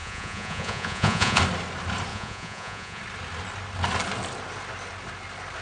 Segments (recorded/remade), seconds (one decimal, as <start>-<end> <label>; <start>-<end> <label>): 0.0-1.4 remade; 1.4-2.1 recorded; 2.1-3.0 remade; 3.0-5.6 recorded